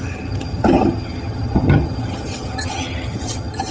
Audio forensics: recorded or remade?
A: remade